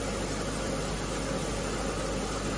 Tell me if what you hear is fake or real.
real